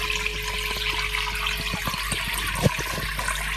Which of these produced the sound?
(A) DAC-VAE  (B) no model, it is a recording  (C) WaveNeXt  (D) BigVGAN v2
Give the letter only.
B